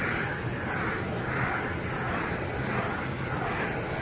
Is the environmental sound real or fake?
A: real